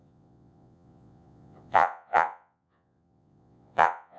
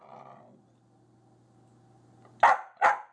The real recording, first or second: second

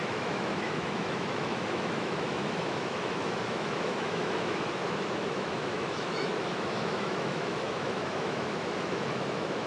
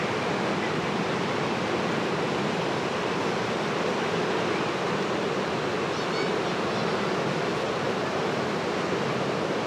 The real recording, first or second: second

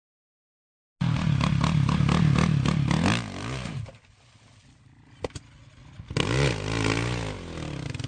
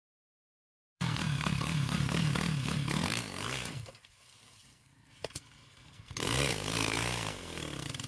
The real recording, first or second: first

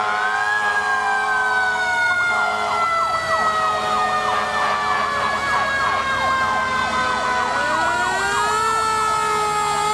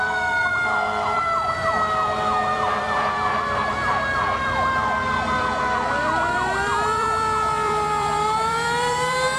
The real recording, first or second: first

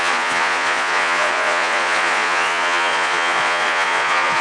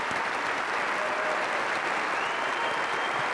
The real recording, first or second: second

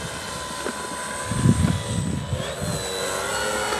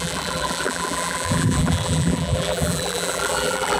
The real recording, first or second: first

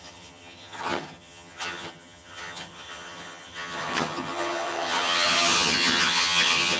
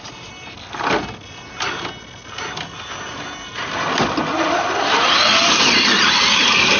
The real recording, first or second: second